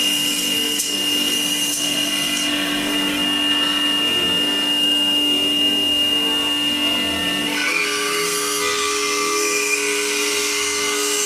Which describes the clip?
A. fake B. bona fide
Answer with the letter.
A